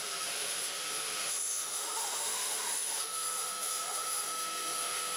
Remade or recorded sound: remade